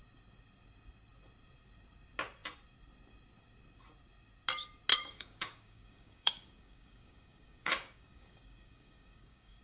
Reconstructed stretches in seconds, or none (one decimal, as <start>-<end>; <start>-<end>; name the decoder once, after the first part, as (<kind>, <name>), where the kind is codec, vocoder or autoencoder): 4.9-9.6 (codec, DAC)